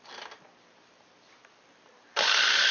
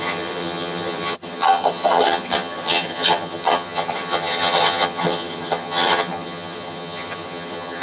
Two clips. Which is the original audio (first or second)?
first